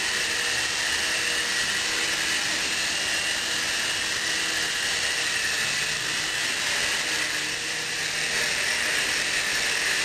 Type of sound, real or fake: real